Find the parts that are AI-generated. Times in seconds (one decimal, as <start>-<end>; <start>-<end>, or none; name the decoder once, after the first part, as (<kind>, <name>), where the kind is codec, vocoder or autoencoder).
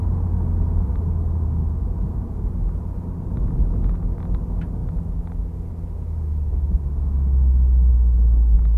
none